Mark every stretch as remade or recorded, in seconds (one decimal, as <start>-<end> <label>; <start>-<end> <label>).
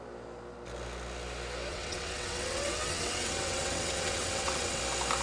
0.0-1.7 recorded; 1.7-4.8 remade; 4.8-5.2 recorded